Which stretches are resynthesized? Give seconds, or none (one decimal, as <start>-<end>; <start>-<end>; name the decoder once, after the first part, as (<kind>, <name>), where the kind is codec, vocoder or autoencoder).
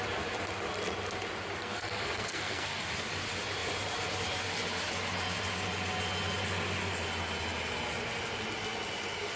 1.6-2.9 (codec, SNAC)